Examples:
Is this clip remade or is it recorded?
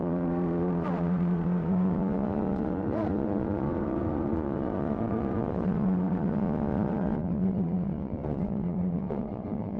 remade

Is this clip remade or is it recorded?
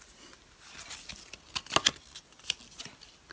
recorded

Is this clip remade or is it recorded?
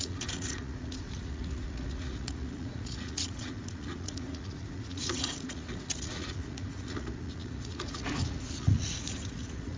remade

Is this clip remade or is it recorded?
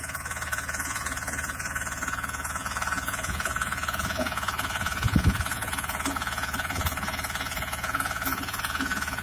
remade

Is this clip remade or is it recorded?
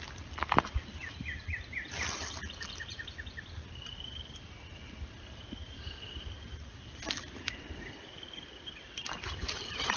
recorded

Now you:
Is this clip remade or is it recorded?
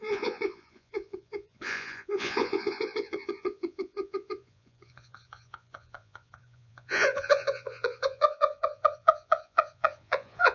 remade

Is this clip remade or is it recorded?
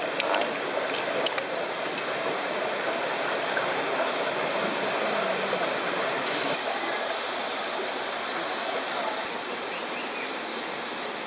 recorded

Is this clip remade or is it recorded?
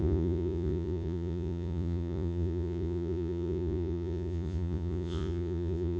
remade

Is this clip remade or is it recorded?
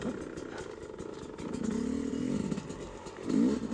recorded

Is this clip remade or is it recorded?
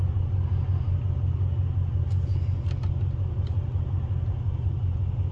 recorded